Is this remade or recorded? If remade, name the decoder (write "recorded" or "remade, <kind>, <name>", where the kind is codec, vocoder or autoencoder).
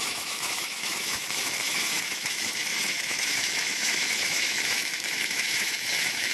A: remade, autoencoder, DAC-VAE